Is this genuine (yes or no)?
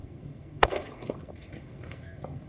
no